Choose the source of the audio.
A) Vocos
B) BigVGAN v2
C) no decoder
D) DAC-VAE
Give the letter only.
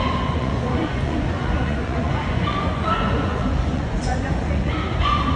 A